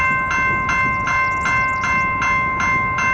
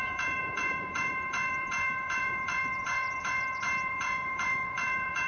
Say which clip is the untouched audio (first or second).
first